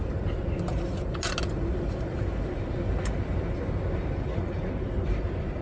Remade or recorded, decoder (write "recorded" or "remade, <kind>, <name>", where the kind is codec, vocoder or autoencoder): recorded